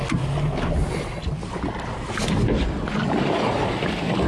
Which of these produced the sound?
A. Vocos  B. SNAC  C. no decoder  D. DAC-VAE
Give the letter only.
C